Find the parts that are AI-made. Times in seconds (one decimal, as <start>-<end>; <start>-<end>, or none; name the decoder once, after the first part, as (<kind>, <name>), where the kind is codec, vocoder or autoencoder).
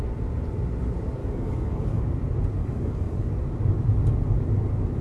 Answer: 1.2-2.0 (codec, DAC); 2.6-3.3